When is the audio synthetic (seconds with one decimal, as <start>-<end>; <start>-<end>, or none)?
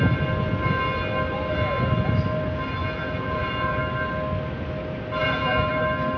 2.8-3.8; 5.2-5.7